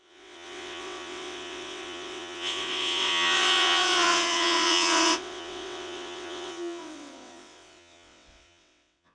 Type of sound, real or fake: fake